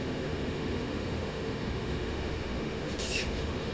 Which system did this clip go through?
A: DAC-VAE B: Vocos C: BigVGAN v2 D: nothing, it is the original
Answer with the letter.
A